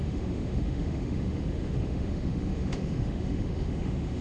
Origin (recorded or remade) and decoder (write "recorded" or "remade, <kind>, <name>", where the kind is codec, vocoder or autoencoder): remade, autoencoder, DAC-VAE